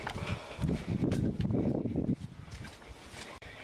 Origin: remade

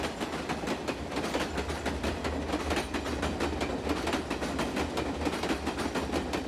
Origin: recorded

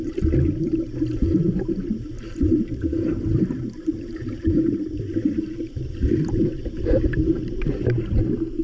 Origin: remade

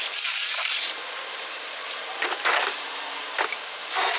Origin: recorded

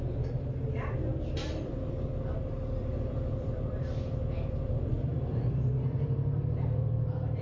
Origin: remade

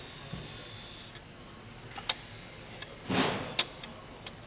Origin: recorded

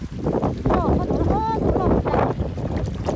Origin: recorded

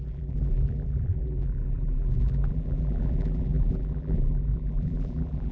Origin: remade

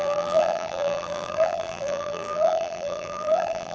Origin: remade